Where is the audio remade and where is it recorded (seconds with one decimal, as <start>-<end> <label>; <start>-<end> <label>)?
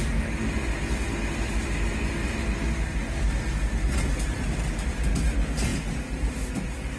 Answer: 0.0-7.0 recorded